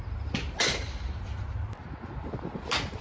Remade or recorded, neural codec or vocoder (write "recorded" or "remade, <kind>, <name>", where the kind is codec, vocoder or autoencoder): recorded